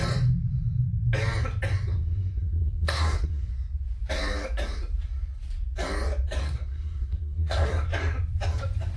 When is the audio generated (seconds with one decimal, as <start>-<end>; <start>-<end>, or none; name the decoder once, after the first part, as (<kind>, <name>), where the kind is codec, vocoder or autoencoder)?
1.9-3.5 (codec, SNAC); 6.4-7.7